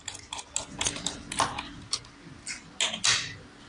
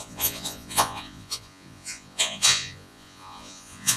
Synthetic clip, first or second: second